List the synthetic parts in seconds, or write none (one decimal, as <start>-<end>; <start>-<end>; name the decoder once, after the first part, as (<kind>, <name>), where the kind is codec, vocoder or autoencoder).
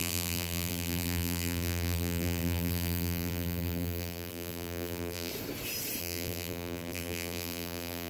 0.0-5.3 (vocoder, BigVGAN v2); 6.0-8.1